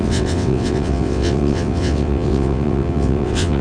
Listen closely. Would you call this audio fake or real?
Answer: fake